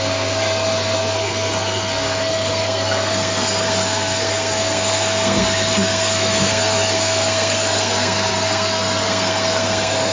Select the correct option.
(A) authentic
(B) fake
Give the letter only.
B